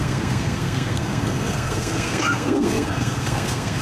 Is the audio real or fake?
fake